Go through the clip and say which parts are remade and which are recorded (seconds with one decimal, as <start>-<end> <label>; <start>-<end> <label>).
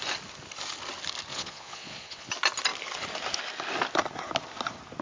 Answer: 0.0-1.3 recorded; 1.3-2.3 remade; 2.3-5.0 recorded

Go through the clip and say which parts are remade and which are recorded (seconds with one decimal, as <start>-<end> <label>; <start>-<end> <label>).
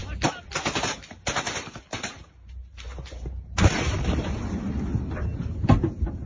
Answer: 0.0-6.3 recorded